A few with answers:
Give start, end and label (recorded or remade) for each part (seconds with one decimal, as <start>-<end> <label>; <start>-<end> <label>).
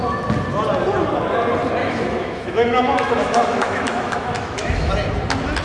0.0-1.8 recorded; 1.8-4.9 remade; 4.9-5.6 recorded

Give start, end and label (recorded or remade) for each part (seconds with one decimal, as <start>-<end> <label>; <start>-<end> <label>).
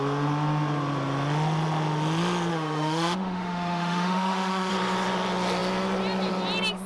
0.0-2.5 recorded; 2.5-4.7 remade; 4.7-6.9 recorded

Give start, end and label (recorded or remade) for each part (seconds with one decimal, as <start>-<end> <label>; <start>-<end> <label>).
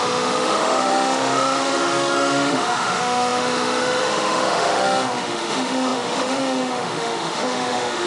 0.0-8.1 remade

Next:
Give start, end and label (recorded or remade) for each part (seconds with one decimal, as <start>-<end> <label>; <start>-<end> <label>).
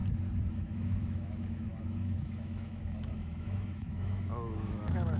0.0-0.5 recorded; 0.5-5.2 remade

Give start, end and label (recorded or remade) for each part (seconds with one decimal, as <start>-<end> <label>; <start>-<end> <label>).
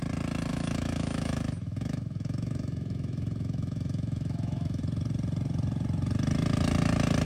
0.0-0.5 recorded; 0.5-4.8 remade; 4.8-7.2 recorded